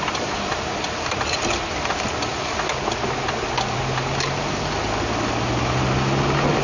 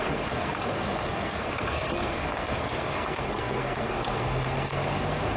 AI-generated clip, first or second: second